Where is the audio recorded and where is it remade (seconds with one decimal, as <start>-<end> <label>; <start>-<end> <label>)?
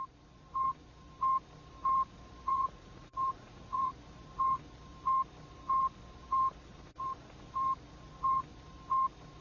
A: 0.0-2.5 recorded; 2.5-3.9 remade; 3.9-9.4 recorded